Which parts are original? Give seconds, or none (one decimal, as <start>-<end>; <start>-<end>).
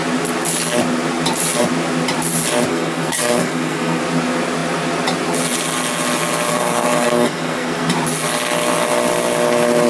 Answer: 0.0-2.7; 4.0-6.5; 7.9-9.9